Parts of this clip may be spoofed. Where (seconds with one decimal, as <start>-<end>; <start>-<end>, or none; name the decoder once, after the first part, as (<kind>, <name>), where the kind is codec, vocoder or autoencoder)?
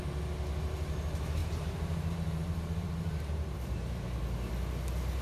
1.4-4.5 (vocoder, BigVGAN v2)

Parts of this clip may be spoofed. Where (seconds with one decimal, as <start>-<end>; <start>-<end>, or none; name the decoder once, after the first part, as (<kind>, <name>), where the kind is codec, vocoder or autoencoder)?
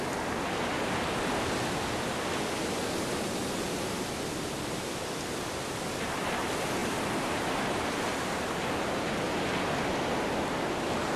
6.8-8.1 (vocoder, BigVGAN v2)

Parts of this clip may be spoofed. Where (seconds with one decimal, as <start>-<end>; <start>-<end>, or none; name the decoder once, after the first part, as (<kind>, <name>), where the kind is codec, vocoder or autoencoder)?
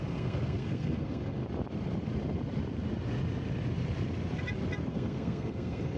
0.0-1.4 (codec, SNAC); 4.9-6.0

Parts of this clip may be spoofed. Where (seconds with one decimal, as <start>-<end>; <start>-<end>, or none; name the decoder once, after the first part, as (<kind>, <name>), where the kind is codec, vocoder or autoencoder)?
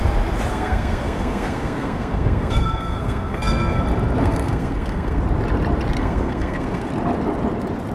0.5-3.8 (codec, SNAC); 4.2-5.2; 6.0-6.9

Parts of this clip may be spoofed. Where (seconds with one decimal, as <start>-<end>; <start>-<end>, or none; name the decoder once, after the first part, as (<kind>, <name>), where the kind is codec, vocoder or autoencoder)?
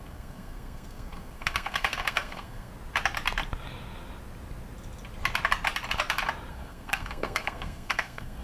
0.0-2.7 (codec, SNAC); 6.5-8.4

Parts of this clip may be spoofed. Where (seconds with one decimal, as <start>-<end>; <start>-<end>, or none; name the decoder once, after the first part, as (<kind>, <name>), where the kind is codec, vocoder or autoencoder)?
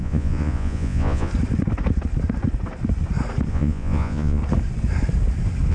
0.0-1.3 (vocoder, Vocos); 3.5-4.4